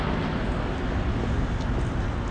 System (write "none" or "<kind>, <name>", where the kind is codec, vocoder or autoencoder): none